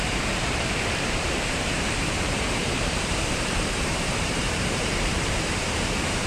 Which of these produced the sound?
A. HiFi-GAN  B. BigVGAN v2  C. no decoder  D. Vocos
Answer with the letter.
B